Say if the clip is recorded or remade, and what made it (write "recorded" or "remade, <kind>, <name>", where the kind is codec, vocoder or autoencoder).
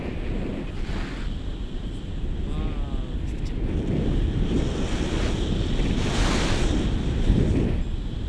recorded